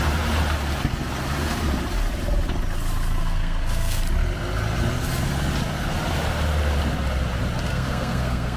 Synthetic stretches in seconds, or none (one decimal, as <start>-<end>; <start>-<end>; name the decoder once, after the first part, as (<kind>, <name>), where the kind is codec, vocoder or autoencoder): 3.2-4.0 (codec, SNAC); 7.7-8.6